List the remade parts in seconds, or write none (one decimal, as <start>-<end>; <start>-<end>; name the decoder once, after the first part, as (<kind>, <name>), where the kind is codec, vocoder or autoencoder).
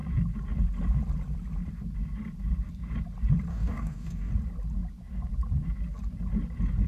3.5-4.3 (codec, DAC)